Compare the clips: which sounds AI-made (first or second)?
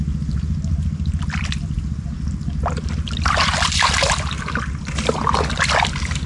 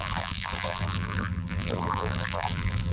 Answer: second